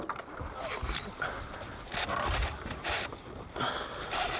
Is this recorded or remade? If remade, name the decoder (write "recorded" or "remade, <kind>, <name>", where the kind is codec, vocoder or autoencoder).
recorded